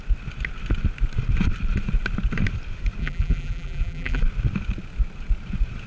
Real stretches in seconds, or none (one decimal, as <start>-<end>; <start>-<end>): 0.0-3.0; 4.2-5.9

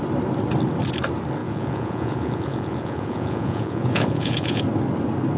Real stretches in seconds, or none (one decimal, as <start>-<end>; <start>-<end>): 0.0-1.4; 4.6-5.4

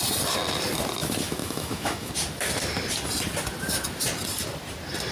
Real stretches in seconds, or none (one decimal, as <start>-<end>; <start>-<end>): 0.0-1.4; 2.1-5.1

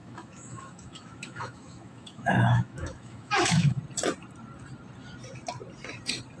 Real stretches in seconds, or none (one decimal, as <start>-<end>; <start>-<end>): 3.8-6.4

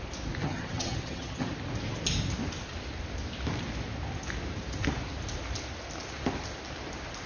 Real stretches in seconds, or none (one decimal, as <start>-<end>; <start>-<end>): 0.0-0.4; 1.5-7.3

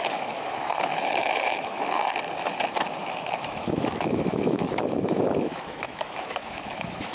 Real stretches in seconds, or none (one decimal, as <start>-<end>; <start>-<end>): 2.0-3.0

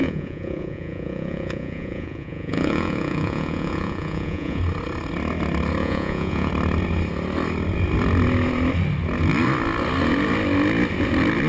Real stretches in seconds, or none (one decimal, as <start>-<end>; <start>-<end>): 4.6-5.8; 6.5-11.5